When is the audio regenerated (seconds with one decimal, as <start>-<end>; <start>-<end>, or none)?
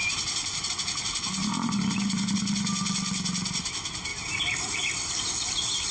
0.0-0.7; 1.4-2.2; 4.1-4.8